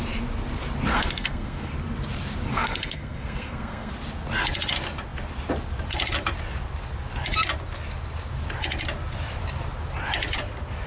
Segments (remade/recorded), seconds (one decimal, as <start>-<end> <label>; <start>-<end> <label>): 0.0-0.9 recorded; 0.9-1.7 remade; 1.7-2.5 recorded; 2.5-3.9 remade; 3.9-10.9 recorded